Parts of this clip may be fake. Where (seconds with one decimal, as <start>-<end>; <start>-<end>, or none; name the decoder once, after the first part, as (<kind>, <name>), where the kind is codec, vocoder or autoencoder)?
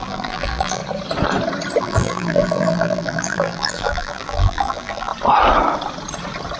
0.0-0.8 (vocoder, BigVGAN v2); 1.8-5.1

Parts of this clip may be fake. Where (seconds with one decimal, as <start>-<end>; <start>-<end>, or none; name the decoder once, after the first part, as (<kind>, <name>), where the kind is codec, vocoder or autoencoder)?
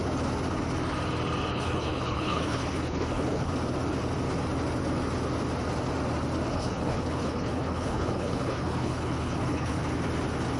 1.5-3.5 (codec, HILCodec); 6.5-9.8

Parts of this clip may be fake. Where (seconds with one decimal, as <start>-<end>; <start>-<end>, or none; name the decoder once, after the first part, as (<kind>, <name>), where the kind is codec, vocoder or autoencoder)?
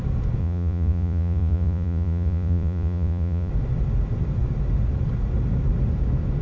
0.4-3.5 (vocoder, Vocos)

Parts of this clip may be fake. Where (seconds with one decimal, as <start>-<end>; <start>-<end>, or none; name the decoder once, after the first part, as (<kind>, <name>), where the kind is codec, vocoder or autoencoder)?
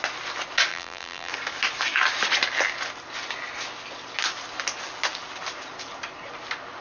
0.7-1.3 (vocoder, BigVGAN v2)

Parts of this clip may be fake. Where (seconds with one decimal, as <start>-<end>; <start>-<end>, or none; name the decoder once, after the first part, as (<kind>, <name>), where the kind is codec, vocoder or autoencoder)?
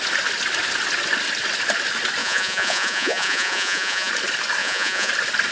2.2-4.1 (vocoder, Vocos); 4.6-5.1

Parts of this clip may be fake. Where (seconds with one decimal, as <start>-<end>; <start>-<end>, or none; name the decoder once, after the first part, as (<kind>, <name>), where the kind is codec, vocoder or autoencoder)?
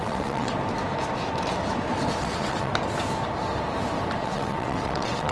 0.0-0.5 (vocoder, WaveNeXt); 2.2-2.7; 4.2-5.3